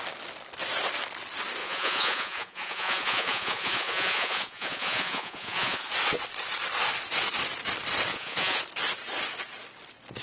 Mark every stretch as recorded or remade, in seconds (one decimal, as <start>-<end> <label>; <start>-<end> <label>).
0.0-1.6 recorded; 1.6-5.9 remade; 5.9-8.1 recorded; 8.1-8.6 remade; 8.6-10.2 recorded